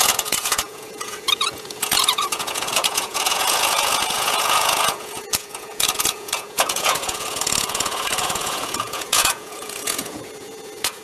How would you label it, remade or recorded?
remade